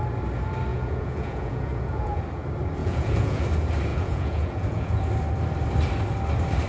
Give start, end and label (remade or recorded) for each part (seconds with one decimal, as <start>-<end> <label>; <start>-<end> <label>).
0.0-0.7 recorded; 0.7-2.2 remade; 2.2-2.8 recorded; 2.8-3.4 remade; 3.4-3.9 recorded; 3.9-5.0 remade; 5.0-6.7 recorded